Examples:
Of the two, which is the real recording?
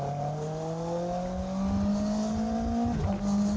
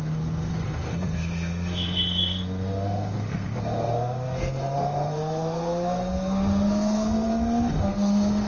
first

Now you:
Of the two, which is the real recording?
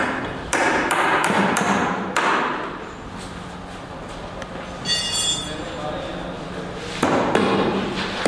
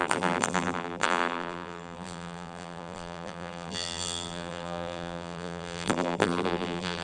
first